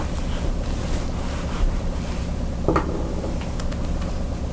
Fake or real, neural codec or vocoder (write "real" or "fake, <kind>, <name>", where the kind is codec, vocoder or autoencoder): real